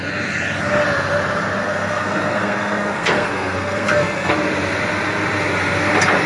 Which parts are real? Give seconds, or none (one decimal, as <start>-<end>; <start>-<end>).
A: 0.0-1.6; 4.3-6.3